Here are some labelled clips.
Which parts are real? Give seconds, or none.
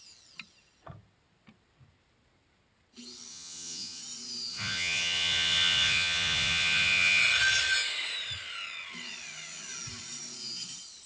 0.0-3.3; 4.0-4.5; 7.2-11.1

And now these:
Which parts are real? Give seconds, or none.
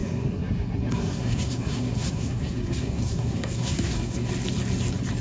4.3-5.2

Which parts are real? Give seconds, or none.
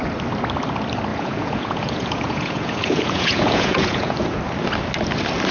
0.0-1.1; 4.4-5.5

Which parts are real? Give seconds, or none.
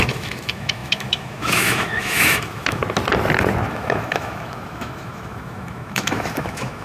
2.8-3.7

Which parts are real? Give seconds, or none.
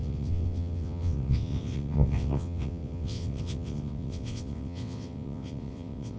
none